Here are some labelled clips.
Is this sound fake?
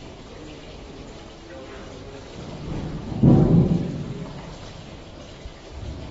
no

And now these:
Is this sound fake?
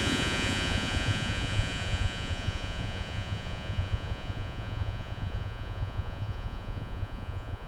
yes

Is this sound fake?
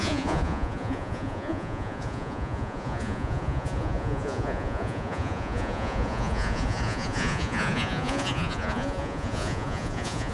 yes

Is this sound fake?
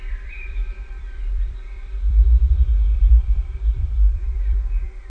yes